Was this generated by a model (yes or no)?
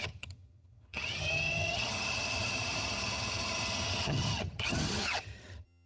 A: yes